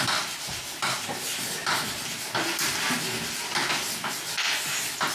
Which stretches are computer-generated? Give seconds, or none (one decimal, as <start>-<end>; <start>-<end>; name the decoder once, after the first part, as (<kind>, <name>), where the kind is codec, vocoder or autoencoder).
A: none